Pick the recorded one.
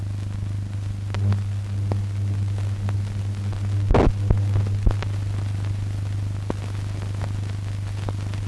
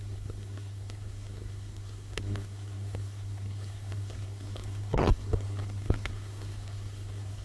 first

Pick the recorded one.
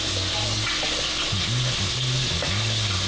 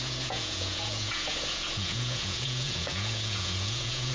first